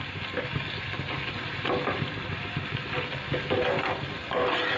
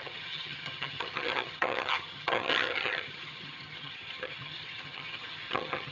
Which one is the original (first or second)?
first